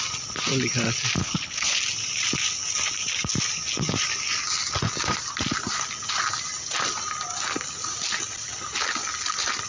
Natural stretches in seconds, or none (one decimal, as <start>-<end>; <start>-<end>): 0.0-1.2; 1.8-9.7